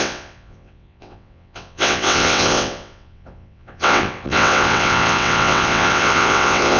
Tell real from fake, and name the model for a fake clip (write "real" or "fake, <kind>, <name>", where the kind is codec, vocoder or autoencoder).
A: fake, vocoder, WaveNeXt